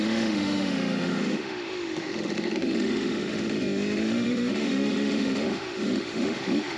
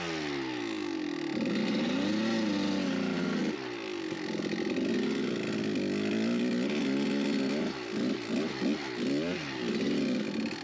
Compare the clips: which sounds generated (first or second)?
first